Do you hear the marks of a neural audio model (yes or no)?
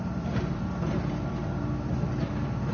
yes